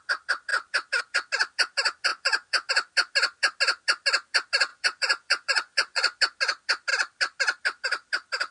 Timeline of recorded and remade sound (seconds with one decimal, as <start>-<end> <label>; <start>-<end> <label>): 0.0-2.1 recorded; 2.1-2.7 remade; 2.7-4.7 recorded; 4.7-6.2 remade; 6.2-8.5 recorded